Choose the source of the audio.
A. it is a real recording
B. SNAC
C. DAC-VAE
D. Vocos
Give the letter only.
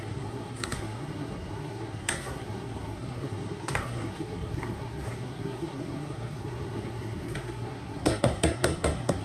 B